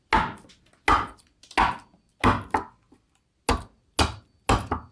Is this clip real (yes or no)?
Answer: yes